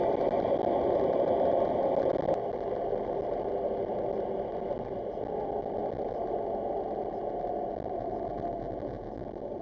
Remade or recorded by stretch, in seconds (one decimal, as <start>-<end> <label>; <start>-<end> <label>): 0.0-9.6 recorded